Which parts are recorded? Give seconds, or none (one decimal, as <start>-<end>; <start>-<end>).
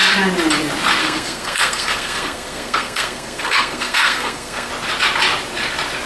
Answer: 0.0-1.0; 4.7-6.1